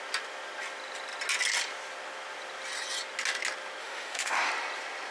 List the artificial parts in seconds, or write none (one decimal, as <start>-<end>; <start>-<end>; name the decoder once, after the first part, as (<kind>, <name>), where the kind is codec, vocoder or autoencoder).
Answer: 3.8-4.5 (autoencoder, DAC-VAE)